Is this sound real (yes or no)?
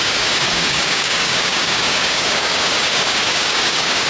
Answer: no